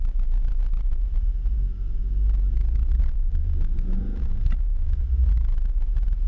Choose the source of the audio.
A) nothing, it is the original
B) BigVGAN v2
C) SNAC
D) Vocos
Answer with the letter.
D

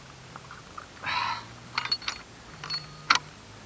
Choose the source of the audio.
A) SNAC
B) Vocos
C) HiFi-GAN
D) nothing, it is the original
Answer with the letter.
D